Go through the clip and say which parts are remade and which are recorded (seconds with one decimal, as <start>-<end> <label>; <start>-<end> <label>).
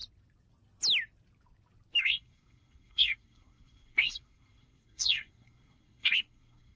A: 0.0-2.0 recorded; 2.0-6.8 remade